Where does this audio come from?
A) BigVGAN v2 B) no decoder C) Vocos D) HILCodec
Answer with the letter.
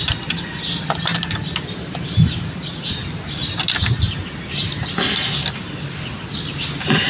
B